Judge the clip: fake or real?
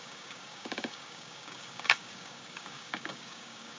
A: fake